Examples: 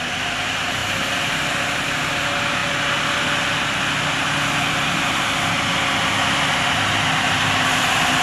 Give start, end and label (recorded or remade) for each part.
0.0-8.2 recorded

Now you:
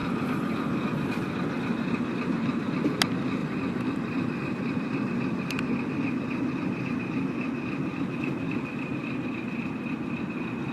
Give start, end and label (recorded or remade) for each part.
0.0-1.1 remade; 1.1-3.4 recorded; 3.4-4.6 remade; 4.6-10.7 recorded

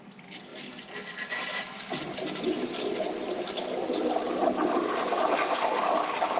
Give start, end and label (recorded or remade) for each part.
0.0-6.4 recorded

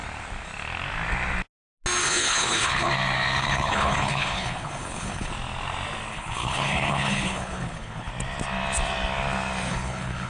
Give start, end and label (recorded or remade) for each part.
0.0-2.0 recorded; 2.0-2.9 remade; 2.9-3.4 recorded; 3.4-5.3 remade; 5.3-6.1 recorded; 6.1-8.1 remade; 8.1-9.7 recorded; 9.7-10.3 remade

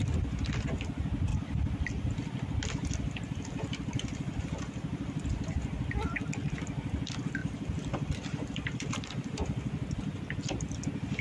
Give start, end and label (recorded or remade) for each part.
0.0-1.3 recorded; 1.3-2.1 remade; 2.1-7.4 recorded; 7.4-9.0 remade; 9.0-11.2 recorded